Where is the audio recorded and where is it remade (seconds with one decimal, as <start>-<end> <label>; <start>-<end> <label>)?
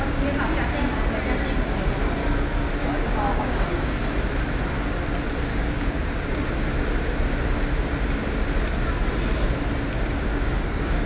0.0-2.8 recorded; 2.8-4.0 remade; 4.0-5.5 recorded; 5.5-6.4 remade; 6.4-10.3 recorded; 10.3-11.1 remade